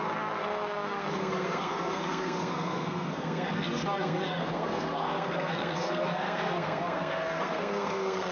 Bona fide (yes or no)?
no